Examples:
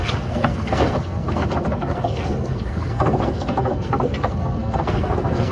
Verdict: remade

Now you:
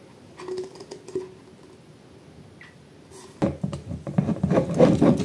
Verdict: recorded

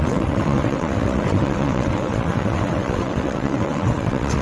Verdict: remade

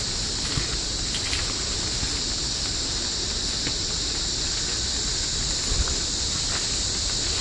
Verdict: recorded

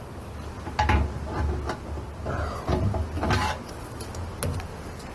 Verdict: recorded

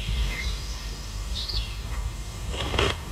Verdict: remade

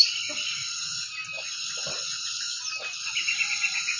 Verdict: recorded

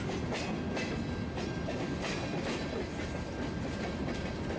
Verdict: recorded